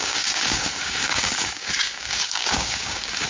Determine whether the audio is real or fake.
fake